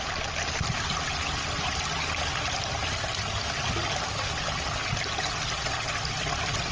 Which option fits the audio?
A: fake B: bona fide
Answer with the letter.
B